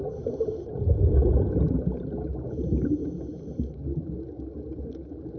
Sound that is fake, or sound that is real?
real